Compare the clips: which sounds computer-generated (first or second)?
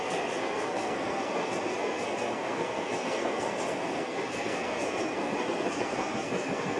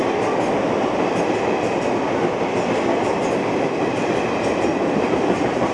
first